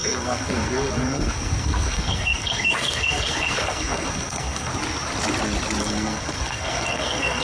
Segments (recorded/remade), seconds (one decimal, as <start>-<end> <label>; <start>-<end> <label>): 0.0-4.7 remade; 4.7-5.8 recorded; 5.8-7.4 remade